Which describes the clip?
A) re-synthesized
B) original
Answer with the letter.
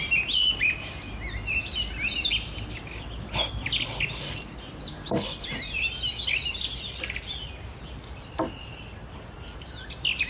B